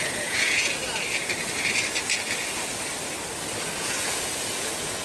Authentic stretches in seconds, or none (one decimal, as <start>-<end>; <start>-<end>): 0.8-3.8